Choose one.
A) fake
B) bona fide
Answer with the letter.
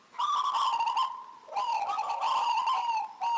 B